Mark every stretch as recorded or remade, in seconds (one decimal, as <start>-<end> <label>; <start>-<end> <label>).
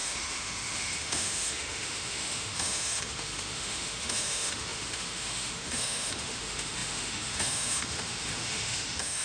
0.0-9.2 remade